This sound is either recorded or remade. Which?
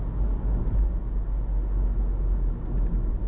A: recorded